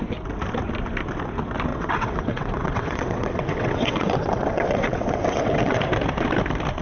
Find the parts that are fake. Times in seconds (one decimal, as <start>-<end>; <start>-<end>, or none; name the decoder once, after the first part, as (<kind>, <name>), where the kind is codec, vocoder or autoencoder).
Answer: 1.7-5.8 (vocoder, WaveNeXt)